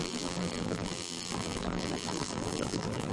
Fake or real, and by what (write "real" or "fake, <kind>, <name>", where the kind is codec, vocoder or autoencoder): fake, vocoder, BigVGAN v2